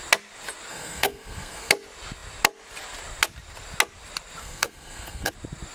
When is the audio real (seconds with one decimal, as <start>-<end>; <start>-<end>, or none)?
0.0-0.7; 1.7-4.4; 5.3-5.7